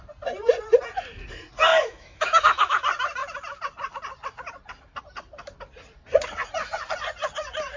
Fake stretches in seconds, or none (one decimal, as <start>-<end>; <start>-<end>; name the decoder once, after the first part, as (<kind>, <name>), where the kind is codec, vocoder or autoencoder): 1.7-2.8 (autoencoder, DAC-VAE)